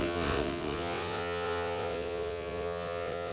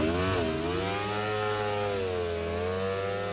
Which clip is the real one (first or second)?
second